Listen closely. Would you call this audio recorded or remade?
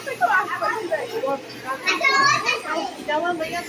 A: recorded